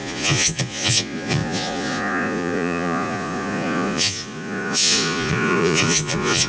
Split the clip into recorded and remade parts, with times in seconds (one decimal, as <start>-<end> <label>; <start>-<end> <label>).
0.0-6.5 remade